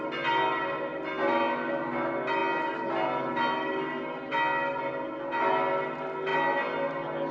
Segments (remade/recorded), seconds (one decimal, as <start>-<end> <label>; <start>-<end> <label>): 0.0-7.3 recorded